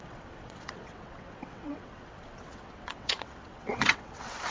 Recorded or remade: remade